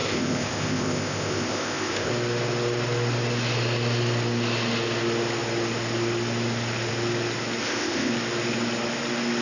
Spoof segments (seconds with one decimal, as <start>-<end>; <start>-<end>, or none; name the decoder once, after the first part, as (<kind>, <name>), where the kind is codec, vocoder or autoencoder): 0.0-2.1 (codec, ZipCodec); 7.6-8.1